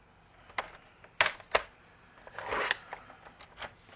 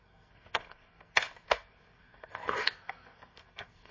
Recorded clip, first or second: first